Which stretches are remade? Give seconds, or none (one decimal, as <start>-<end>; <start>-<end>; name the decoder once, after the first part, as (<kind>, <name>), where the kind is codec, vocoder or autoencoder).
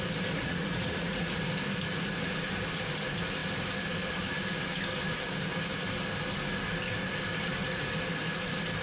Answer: 0.4-1.4 (vocoder, Vocos)